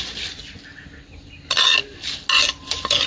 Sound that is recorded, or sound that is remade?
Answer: recorded